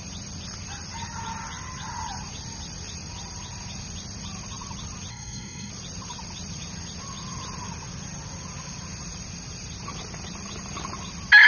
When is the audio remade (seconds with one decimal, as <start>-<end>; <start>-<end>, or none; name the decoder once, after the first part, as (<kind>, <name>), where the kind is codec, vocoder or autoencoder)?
5.1-5.7 (codec, SNAC)

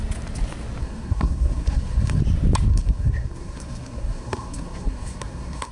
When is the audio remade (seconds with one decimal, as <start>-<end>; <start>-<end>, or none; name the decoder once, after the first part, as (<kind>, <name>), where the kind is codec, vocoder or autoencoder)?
0.8-2.2 (codec, SNAC); 2.7-5.7

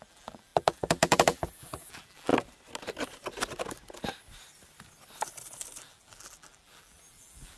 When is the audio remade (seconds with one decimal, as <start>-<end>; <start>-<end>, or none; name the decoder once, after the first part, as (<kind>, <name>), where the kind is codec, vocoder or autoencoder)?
0.0-2.3 (vocoder, BigVGAN v2); 5.8-7.6

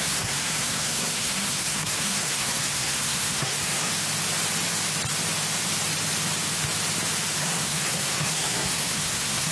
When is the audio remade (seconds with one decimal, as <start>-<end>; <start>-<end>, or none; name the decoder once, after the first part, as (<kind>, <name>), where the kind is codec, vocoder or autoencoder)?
0.0-3.9 (codec, SNAC); 7.4-9.5

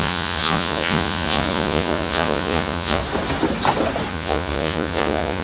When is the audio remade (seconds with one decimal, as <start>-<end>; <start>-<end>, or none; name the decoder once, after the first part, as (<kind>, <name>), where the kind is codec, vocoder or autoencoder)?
0.0-3.0 (vocoder, Vocos); 4.1-5.4

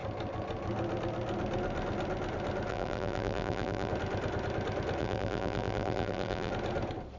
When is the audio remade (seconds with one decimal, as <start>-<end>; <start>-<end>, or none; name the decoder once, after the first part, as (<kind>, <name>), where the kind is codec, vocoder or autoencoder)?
2.7-3.9 (vocoder, BigVGAN v2); 5.0-6.5

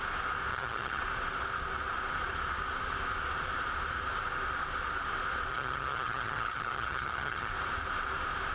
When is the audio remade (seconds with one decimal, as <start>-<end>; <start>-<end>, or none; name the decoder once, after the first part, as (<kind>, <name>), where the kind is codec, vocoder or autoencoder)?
0.5-1.0 (vocoder, HiFi-GAN); 5.5-7.5